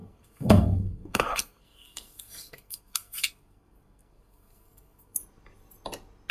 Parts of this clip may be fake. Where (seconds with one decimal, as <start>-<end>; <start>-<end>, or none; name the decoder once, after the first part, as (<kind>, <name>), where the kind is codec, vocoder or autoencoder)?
0.0-5.2 (codec, SNAC)